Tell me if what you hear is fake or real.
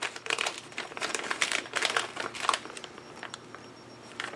fake